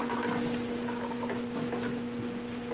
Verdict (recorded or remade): recorded